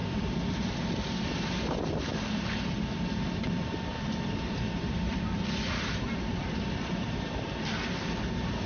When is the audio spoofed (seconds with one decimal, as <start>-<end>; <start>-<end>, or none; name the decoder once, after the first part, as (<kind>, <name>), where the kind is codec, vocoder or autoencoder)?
0.0-1.8 (vocoder, BigVGAN v2); 3.9-7.2